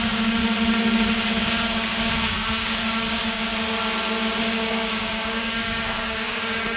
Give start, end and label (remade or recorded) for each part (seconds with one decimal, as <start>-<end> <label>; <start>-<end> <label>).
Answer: 0.0-0.4 remade; 0.4-1.3 recorded; 1.3-3.5 remade; 3.5-4.4 recorded; 4.4-6.8 remade